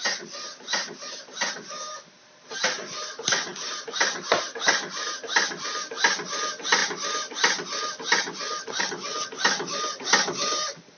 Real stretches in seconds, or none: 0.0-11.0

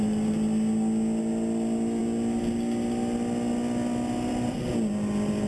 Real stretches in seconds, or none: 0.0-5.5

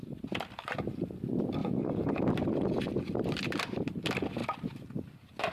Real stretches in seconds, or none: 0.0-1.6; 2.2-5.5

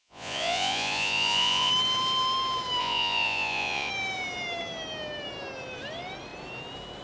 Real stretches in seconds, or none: 1.7-2.8; 3.9-7.0